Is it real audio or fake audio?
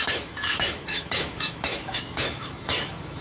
fake